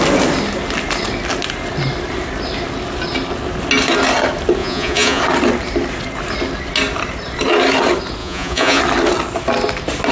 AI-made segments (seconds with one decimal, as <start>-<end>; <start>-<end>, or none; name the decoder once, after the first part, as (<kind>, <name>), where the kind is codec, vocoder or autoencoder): 4.6-5.2 (vocoder, Vocos); 8.2-8.8

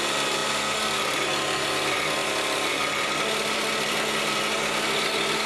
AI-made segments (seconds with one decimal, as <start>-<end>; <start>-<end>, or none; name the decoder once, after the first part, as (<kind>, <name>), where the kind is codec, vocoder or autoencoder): none

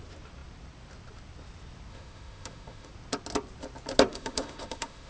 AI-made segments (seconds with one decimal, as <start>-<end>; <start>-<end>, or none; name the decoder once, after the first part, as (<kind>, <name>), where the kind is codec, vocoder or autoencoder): 1.9-2.9 (autoencoder, DAC-VAE); 4.1-5.1

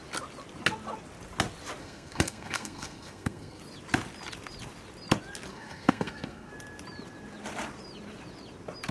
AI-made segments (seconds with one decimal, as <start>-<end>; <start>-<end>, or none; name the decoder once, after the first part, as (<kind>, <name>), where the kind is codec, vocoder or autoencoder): 1.8-3.6 (codec, SNAC); 5.5-6.5

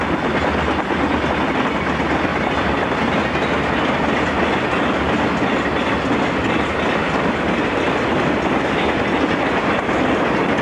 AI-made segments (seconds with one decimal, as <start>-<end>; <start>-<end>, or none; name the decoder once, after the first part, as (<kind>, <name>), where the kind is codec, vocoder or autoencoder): 2.3-2.9 (vocoder, BigVGAN v2)

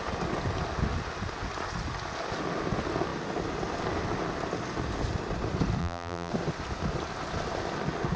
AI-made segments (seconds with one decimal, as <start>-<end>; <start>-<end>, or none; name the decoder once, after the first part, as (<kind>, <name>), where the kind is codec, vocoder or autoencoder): 5.8-6.3 (vocoder, BigVGAN v2)

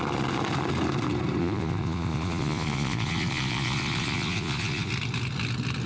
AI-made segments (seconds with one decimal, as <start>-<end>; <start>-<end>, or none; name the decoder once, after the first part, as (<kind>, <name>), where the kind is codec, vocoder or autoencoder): 1.4-4.9 (vocoder, Vocos)

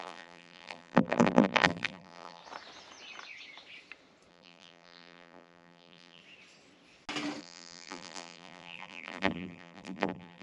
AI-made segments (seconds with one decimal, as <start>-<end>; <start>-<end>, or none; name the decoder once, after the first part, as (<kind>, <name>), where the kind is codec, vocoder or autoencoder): 0.0-2.4 (vocoder, BigVGAN v2); 4.3-6.2; 7.4-10.4